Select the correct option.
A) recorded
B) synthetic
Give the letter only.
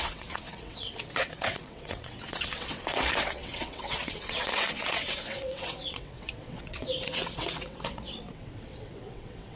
B